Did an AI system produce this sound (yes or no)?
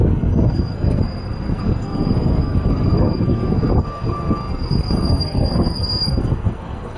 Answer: yes